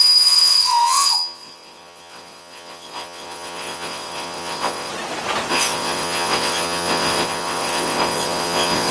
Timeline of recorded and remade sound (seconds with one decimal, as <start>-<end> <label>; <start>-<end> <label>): 0.0-4.9 remade; 4.9-5.5 recorded; 5.5-8.9 remade